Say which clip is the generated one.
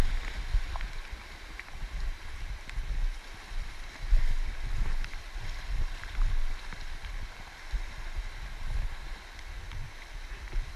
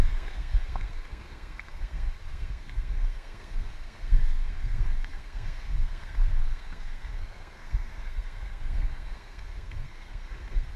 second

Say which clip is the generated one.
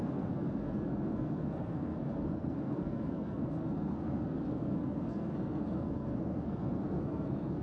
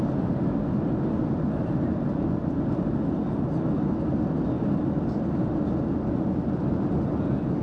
first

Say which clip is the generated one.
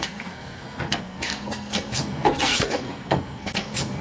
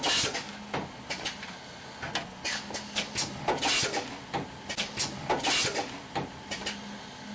first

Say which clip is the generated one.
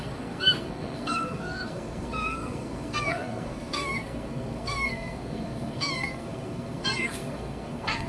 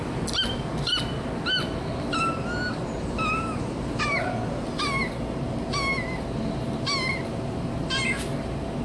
first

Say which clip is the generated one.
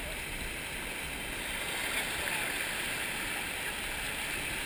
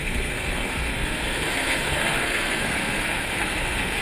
second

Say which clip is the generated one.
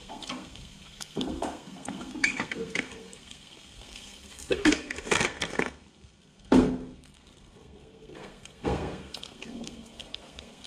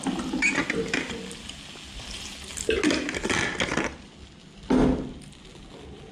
first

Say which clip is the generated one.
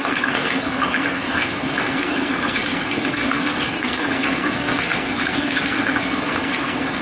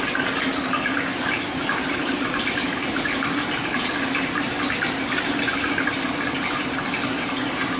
first